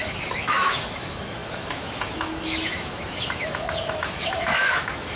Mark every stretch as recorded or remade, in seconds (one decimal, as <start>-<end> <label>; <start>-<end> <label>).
0.0-5.2 remade